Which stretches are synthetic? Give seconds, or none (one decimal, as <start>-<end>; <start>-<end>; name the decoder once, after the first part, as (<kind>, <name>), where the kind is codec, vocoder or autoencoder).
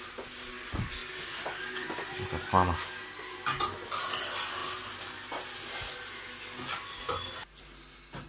none